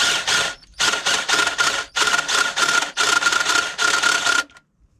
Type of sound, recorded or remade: recorded